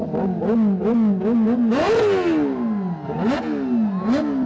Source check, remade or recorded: recorded